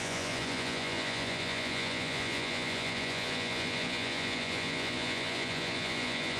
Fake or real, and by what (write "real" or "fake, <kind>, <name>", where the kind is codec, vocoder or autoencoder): fake, vocoder, Vocos